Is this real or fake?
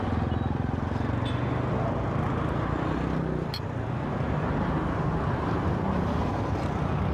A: real